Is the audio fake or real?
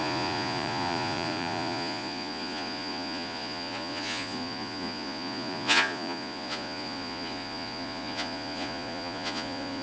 fake